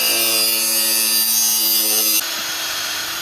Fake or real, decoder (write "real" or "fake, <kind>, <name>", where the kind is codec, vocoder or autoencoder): real